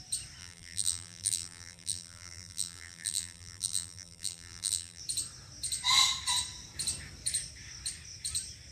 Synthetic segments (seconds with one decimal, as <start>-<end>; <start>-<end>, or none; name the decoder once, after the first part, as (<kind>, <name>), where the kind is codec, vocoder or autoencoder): 0.4-5.0 (vocoder, BigVGAN v2)